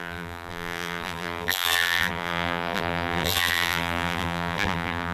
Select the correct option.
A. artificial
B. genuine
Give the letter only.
A